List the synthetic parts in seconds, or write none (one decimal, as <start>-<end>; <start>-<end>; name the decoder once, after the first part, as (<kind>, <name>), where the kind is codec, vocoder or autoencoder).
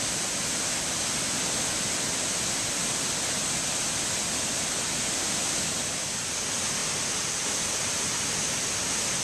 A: none